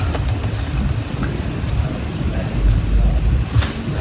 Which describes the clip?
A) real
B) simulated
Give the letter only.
A